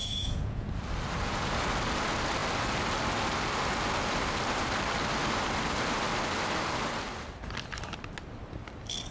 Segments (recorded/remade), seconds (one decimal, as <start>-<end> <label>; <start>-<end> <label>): 0.0-0.7 remade; 0.7-9.1 recorded